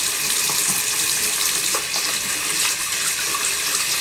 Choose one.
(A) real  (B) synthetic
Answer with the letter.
A